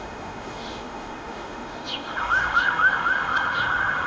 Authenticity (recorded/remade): remade